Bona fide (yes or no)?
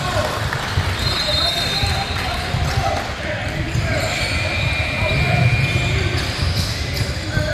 no